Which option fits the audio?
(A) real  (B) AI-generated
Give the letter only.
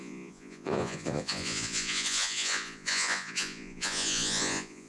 B